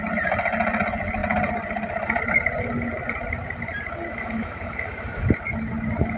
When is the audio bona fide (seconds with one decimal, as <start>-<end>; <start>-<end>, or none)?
0.0-4.1; 5.3-6.2